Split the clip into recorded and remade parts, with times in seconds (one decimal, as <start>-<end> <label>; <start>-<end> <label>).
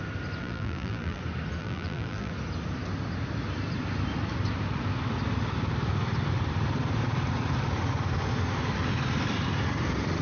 0.0-0.4 recorded; 0.4-1.2 remade; 1.2-1.6 recorded; 1.6-2.3 remade; 2.3-10.2 recorded